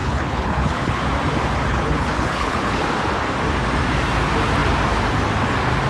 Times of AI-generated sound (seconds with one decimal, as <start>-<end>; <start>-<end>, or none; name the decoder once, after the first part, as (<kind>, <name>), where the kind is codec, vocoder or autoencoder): 0.0-1.0 (codec, HILCodec); 1.7-2.8